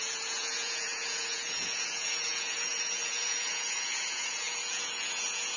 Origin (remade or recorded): remade